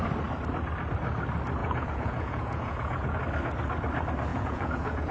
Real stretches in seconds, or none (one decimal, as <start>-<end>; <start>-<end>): 0.0-1.6; 3.2-4.3